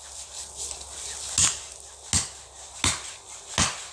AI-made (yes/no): no